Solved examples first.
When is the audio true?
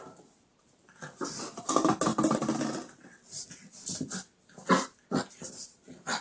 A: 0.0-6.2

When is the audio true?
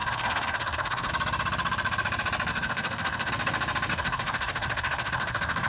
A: 1.1-2.5; 3.3-3.9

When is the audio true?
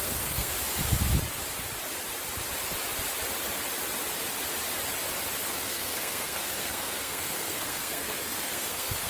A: 0.5-5.5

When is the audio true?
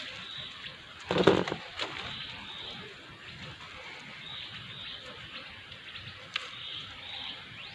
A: 0.0-7.7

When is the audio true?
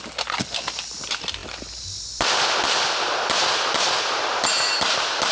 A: 0.0-5.3